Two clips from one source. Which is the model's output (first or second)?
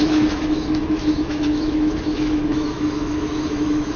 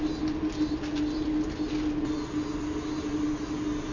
first